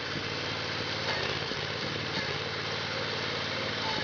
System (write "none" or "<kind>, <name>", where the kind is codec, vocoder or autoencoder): none